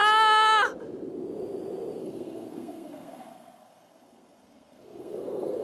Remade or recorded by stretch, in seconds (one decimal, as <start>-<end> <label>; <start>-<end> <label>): 0.0-2.0 recorded; 2.0-5.6 remade